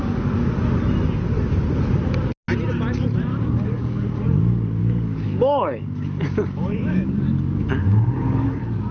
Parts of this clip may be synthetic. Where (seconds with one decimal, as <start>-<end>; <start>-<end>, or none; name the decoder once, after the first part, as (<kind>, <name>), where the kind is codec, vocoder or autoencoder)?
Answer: 3.3-4.2 (codec, DAC); 4.8-8.9